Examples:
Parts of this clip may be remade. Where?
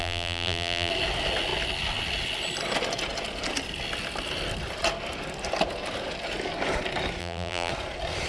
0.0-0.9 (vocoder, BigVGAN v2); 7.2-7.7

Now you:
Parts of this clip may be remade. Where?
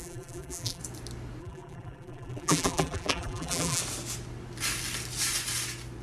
0.0-0.8 (vocoder, BigVGAN v2); 1.4-3.8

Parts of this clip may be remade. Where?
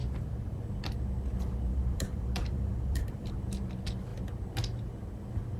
1.7-3.3 (vocoder, BigVGAN v2)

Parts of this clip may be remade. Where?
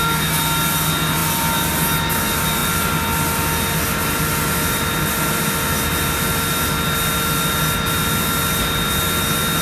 none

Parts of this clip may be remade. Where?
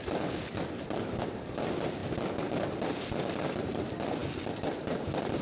none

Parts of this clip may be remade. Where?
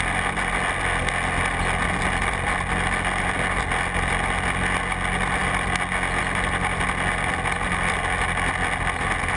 none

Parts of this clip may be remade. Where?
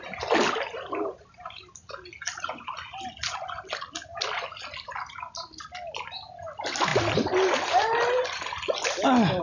0.7-2.7 (vocoder, BigVGAN v2)